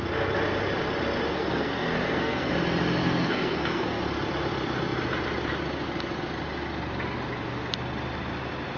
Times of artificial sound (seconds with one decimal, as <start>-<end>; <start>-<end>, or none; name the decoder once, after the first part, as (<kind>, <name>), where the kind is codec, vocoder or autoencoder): 1.3-2.5 (codec, SNAC); 3.0-4.0